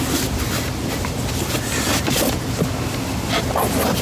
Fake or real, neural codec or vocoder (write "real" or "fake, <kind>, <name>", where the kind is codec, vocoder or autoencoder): fake, vocoder, BigVGAN v2